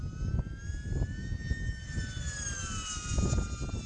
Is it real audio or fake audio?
real